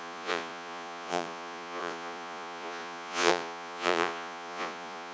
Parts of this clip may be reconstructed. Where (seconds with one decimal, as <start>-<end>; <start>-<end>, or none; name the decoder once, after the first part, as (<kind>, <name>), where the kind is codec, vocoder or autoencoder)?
0.0-5.1 (vocoder, Vocos)